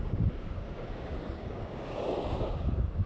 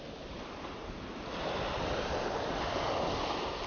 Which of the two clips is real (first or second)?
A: second